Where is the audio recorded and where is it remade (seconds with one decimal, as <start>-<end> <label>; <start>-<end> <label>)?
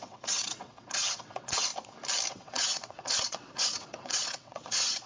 0.0-1.7 remade; 1.7-2.3 recorded; 2.3-5.1 remade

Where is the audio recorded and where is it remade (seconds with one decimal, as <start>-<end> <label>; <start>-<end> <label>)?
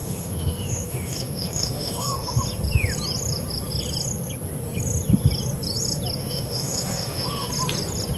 0.0-2.4 remade; 2.4-6.2 recorded; 6.2-7.5 remade; 7.5-8.2 recorded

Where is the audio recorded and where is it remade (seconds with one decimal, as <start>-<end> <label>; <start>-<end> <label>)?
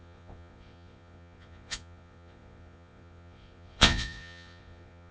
0.0-5.1 remade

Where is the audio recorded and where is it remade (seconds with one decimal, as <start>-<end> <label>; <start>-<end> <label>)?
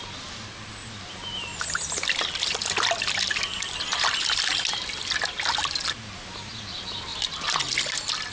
0.0-1.5 recorded; 1.5-4.4 remade; 4.4-8.3 recorded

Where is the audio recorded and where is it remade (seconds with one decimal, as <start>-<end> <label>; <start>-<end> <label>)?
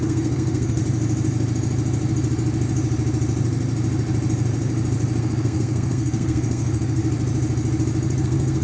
0.0-0.8 remade; 0.8-5.2 recorded; 5.2-7.0 remade; 7.0-8.2 recorded; 8.2-8.6 remade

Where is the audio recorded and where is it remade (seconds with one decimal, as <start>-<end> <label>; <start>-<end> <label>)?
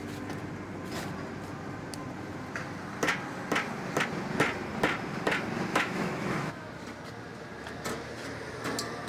0.0-5.7 recorded; 5.7-6.7 remade; 6.7-9.1 recorded